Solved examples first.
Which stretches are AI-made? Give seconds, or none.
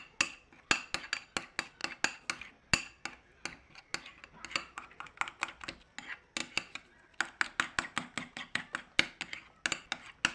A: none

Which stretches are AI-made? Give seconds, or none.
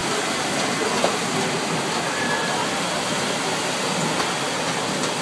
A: none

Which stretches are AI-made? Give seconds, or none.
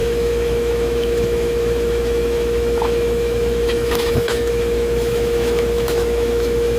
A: 0.0-6.8 (autoencoder, DAC-VAE)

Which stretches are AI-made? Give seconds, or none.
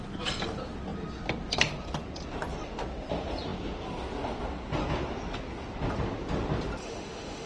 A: 6.8-7.5 (autoencoder, DAC-VAE)